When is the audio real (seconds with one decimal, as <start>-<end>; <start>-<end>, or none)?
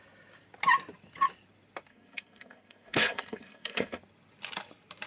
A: 0.0-1.9; 4.0-5.1